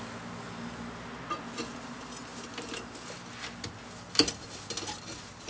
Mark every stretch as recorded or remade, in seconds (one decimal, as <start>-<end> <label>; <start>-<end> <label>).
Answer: 0.0-5.5 recorded